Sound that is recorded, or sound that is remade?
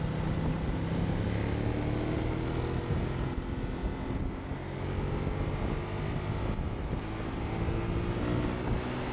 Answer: recorded